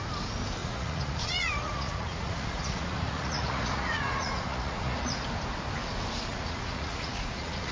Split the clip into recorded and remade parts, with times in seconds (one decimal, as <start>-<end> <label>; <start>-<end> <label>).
0.0-0.6 recorded; 0.6-5.2 remade; 5.2-6.3 recorded; 6.3-7.7 remade